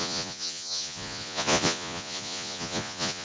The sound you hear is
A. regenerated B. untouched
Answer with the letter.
A